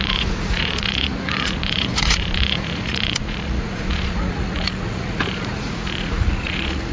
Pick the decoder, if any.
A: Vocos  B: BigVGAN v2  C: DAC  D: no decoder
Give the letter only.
A